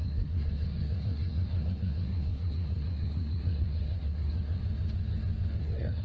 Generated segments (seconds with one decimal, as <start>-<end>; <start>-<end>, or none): 0.0-4.6; 5.6-6.0

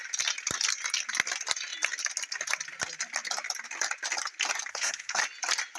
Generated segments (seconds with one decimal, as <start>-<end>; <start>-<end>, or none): 4.7-5.2